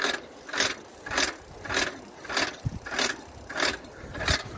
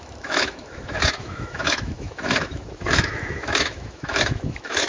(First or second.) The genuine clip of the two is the first